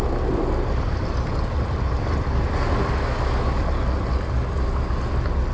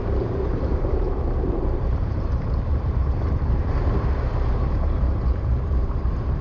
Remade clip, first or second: second